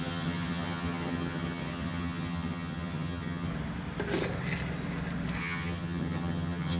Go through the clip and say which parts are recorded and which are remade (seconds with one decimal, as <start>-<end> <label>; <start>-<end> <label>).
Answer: 0.0-3.5 remade; 3.5-5.4 recorded; 5.4-6.8 remade